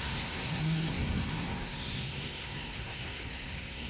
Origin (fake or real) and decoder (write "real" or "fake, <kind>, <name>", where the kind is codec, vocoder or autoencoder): fake, codec, SNAC